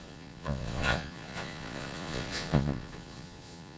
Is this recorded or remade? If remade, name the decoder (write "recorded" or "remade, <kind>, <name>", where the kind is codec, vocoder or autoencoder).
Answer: remade, vocoder, Vocos